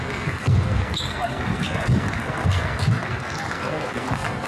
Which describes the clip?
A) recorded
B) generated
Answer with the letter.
B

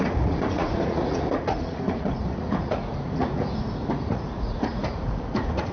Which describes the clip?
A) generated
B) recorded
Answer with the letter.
A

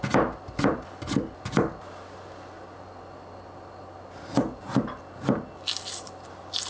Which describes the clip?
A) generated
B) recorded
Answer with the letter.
B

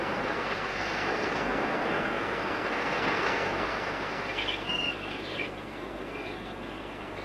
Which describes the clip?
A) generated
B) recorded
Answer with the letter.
A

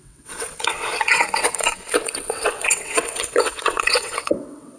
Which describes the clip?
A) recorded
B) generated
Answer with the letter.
B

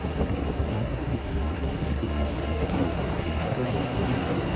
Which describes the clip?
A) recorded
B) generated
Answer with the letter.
B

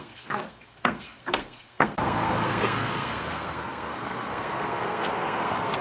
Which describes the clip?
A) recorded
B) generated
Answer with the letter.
B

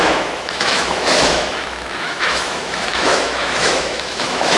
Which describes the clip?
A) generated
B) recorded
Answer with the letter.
A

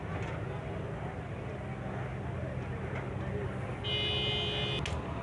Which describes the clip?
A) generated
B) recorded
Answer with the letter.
B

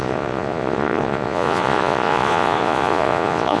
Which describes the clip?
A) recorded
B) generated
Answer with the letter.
B